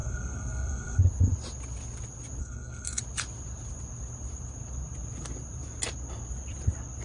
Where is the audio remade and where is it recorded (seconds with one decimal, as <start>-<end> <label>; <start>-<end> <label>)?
0.0-1.0 remade; 1.0-2.4 recorded; 2.4-3.0 remade; 3.0-7.0 recorded